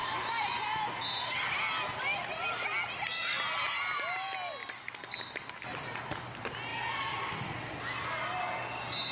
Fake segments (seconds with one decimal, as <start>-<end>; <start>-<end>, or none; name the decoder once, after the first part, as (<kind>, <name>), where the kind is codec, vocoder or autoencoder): none